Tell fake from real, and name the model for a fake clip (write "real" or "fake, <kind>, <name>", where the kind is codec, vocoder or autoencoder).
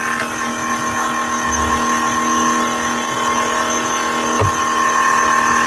real